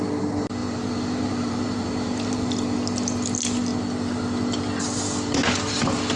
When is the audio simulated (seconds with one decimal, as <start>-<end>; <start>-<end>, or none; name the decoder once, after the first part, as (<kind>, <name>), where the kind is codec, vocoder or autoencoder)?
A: 0.6-2.5 (vocoder, BigVGAN v2)